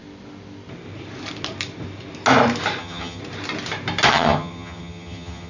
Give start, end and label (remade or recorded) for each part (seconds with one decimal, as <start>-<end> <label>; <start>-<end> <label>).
0.0-2.8 recorded; 2.8-3.2 remade; 3.2-4.1 recorded; 4.1-5.5 remade